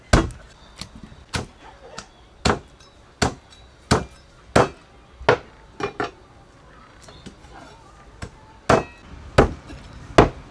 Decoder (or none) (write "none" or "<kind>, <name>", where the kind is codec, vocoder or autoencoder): none